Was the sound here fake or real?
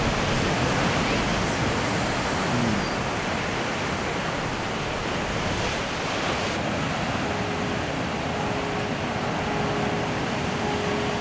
real